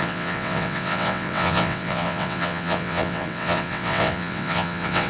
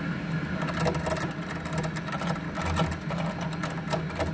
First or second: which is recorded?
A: second